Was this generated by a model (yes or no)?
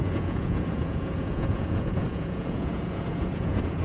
yes